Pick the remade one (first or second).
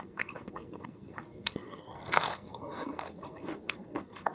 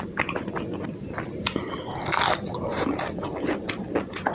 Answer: first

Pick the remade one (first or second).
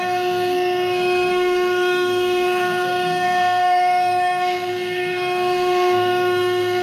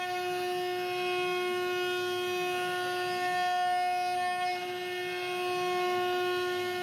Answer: first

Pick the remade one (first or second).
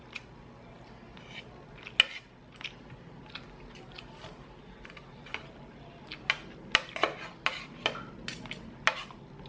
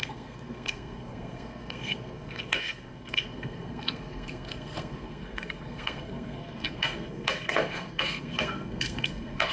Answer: second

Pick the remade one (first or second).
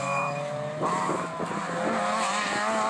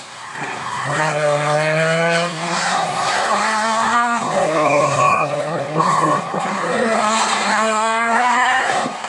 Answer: second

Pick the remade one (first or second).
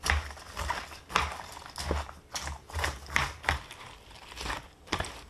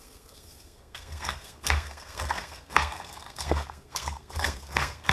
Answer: second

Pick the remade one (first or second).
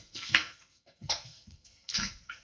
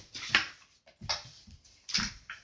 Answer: first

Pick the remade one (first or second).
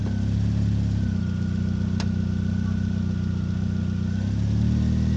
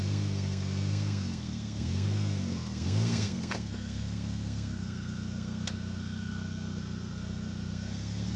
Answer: second